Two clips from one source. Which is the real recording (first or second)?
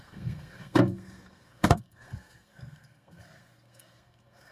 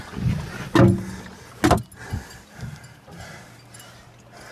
second